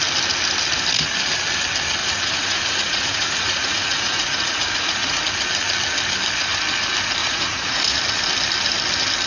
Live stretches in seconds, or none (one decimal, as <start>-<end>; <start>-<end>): 0.0-2.0; 5.2-7.2; 7.8-9.3